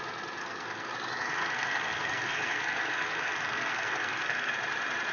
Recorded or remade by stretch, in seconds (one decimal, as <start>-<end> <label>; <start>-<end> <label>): 0.0-0.4 recorded; 0.4-0.9 remade; 0.9-1.4 recorded; 1.4-4.5 remade; 4.5-5.1 recorded